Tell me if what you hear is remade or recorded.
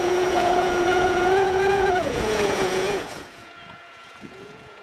remade